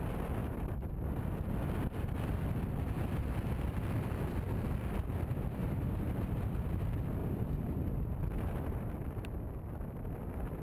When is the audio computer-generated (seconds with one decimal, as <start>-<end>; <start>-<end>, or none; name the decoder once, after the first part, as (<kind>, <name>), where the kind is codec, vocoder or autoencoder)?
0.4-0.9 (vocoder, BigVGAN v2); 5.6-6.2; 7.2-8.9